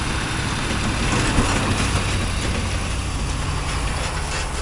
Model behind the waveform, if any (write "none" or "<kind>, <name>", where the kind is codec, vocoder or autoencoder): none